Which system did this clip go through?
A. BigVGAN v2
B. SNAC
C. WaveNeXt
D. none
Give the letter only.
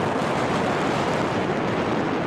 D